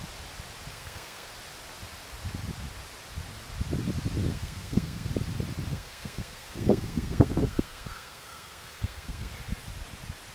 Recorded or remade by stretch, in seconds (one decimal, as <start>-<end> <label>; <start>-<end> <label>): 0.0-0.7 recorded; 0.7-1.3 remade; 1.3-4.3 recorded; 4.3-5.1 remade; 5.1-5.7 recorded; 5.7-9.3 remade; 9.3-10.3 recorded